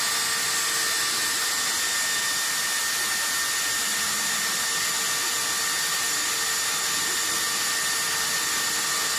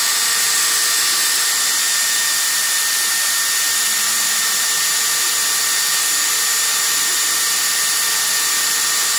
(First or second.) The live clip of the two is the first